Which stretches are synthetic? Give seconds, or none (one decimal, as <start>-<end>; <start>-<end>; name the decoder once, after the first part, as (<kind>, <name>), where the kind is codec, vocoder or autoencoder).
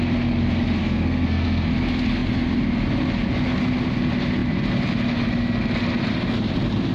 0.8-1.7 (codec, SNAC)